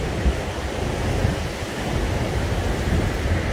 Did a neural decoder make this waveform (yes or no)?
no